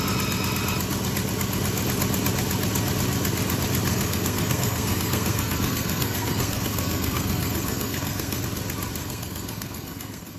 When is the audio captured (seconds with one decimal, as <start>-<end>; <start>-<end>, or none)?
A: 0.0-3.9; 8.4-9.0